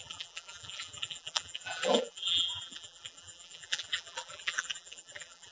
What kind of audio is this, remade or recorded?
remade